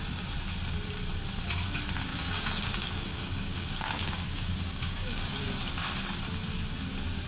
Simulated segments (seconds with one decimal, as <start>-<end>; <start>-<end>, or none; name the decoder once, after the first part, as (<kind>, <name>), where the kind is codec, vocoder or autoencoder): 2.1-5.5 (codec, DAC)